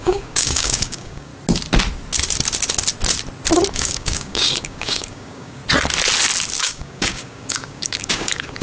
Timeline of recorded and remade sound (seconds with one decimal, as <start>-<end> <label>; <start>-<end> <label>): 0.0-1.3 remade; 1.3-3.7 recorded; 3.7-5.6 remade; 5.6-6.6 recorded; 6.6-8.6 remade